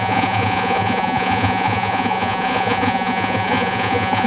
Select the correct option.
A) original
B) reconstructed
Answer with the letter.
B